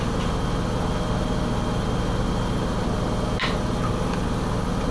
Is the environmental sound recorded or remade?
recorded